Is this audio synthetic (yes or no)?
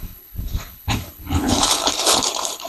yes